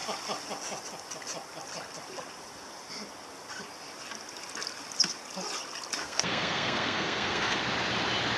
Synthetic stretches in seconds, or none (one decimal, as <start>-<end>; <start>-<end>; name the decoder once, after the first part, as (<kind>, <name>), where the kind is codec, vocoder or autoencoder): 6.0-7.6 (codec, SNAC)